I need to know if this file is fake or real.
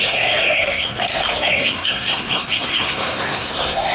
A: fake